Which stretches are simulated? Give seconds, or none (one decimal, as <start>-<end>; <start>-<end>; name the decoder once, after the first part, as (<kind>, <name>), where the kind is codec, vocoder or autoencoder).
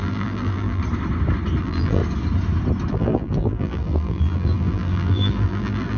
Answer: 0.0-0.8 (vocoder, BigVGAN v2); 1.6-2.0; 2.9-6.0